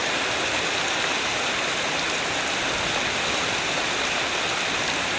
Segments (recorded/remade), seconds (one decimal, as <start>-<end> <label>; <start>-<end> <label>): 0.0-5.2 recorded